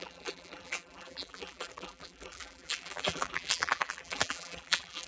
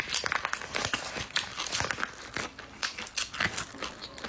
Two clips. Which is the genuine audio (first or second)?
second